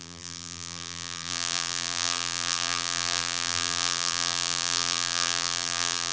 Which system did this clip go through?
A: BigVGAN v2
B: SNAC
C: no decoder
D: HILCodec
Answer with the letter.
A